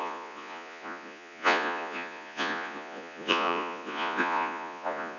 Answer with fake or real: fake